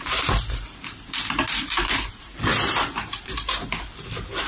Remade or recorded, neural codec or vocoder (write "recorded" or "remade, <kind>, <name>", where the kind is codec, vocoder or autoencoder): remade, vocoder, BigVGAN v2